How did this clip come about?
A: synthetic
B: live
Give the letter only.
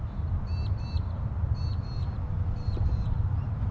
A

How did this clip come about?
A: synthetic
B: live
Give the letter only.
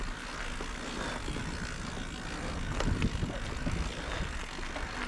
B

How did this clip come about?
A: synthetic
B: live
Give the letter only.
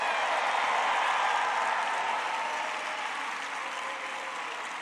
B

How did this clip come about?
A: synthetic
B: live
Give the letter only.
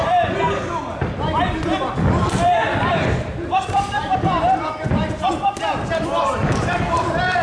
A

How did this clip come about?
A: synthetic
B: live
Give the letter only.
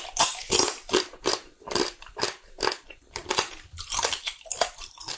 A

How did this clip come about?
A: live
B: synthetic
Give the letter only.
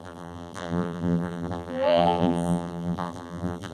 B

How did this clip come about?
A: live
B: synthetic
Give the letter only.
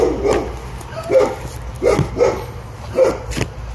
A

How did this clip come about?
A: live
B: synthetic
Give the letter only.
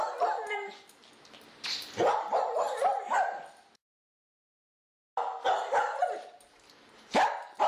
A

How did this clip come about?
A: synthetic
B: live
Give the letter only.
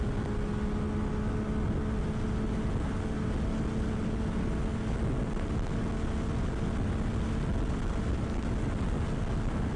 B